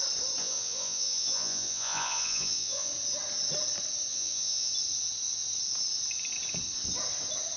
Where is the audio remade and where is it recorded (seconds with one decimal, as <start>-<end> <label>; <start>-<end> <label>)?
0.0-0.4 recorded; 0.4-2.9 remade; 2.9-4.1 recorded; 4.1-4.7 remade; 4.7-7.6 recorded